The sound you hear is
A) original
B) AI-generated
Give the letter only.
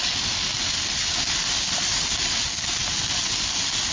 A